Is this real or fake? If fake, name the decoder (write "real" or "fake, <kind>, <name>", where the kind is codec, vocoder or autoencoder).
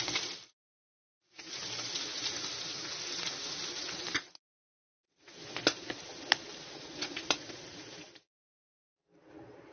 real